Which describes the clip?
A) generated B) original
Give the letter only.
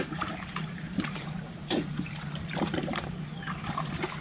A